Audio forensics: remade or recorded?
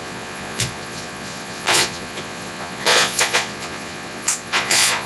remade